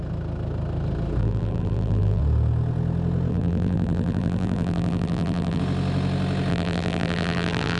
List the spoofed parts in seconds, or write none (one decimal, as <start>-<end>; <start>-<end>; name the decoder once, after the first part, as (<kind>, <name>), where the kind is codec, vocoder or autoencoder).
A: 1.2-2.2 (vocoder, BigVGAN v2); 3.3-5.6; 6.5-7.8